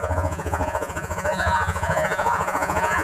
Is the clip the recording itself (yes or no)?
no